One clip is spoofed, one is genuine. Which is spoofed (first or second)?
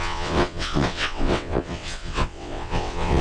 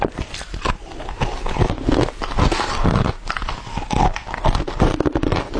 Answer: first